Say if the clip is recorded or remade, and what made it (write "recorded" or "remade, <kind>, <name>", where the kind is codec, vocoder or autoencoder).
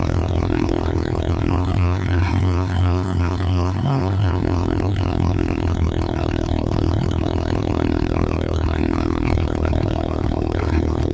remade, codec, SNAC